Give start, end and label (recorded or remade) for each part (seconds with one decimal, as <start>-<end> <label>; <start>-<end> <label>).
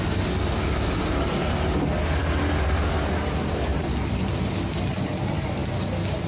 0.0-6.3 recorded